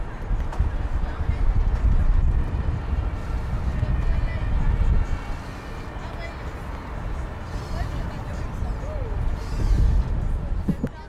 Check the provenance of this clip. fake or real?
real